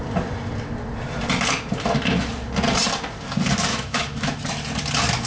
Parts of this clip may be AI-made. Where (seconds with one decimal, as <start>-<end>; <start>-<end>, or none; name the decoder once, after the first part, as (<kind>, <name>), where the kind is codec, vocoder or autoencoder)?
3.7-4.4 (autoencoder, DAC-VAE)

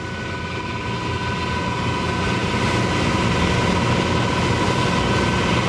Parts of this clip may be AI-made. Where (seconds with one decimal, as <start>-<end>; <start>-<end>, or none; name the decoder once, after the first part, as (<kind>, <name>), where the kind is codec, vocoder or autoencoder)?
none

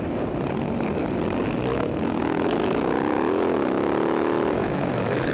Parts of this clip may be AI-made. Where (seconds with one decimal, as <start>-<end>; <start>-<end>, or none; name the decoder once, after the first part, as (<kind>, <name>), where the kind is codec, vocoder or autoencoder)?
1.7-5.3 (autoencoder, DAC-VAE)

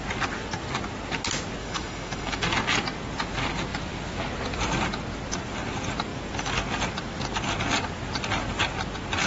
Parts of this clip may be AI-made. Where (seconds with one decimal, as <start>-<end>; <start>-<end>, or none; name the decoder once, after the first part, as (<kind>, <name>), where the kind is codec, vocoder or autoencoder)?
1.6-2.4 (autoencoder, DAC-VAE)

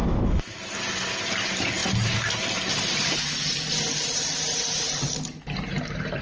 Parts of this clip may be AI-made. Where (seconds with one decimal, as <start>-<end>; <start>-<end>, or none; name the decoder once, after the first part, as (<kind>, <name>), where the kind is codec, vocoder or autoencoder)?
0.0-0.6 (autoencoder, DAC-VAE)

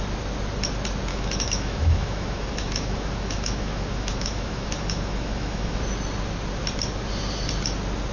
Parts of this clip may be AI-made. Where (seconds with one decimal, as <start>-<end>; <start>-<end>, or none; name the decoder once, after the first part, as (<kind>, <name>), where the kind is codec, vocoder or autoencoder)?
1.1-5.8 (autoencoder, DAC-VAE)

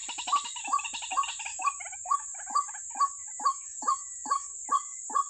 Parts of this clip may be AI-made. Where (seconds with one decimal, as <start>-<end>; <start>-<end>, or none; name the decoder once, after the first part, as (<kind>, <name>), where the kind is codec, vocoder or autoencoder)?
1.5-4.7 (autoencoder, DAC-VAE)